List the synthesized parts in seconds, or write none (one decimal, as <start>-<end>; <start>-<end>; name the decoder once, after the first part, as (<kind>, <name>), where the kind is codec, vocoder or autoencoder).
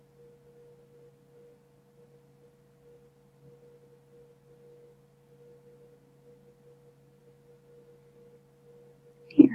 none